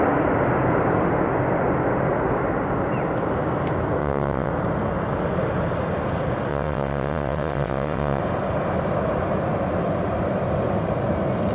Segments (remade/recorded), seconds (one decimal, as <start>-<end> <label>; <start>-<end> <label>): 0.0-4.0 recorded; 4.0-4.5 remade; 4.5-6.5 recorded; 6.5-8.2 remade; 8.2-11.5 recorded